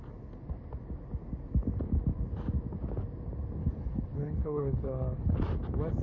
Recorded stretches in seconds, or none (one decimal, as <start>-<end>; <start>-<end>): 0.0-3.6; 5.4-6.0